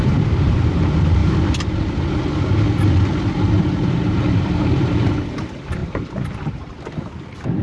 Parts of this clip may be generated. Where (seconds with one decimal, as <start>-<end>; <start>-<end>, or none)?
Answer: 0.0-1.2; 3.5-7.6

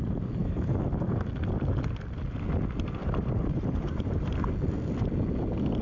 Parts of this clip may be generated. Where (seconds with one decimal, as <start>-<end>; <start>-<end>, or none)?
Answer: 0.4-0.9; 3.0-4.5

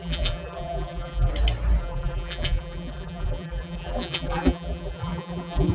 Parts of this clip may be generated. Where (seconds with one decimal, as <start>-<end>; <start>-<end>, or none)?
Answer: 0.0-1.3; 1.8-5.7

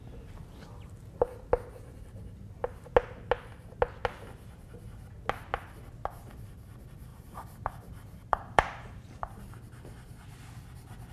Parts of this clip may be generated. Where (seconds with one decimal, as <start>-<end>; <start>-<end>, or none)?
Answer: 7.1-9.5

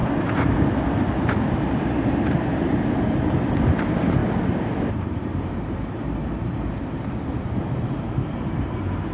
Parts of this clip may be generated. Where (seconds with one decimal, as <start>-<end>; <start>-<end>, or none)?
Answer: 0.0-2.5; 3.5-4.2; 4.8-9.1